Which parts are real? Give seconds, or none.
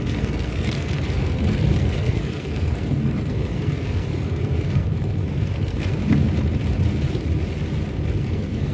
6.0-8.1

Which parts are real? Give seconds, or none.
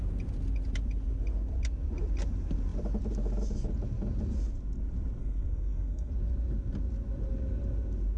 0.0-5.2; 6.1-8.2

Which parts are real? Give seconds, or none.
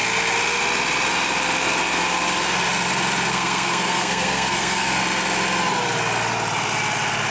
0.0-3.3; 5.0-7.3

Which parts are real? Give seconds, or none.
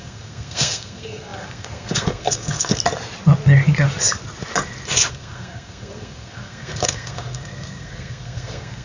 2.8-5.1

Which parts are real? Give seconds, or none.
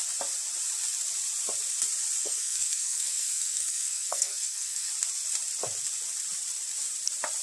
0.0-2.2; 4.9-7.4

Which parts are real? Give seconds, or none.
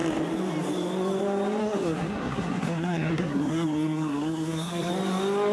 0.0-1.6; 4.9-5.5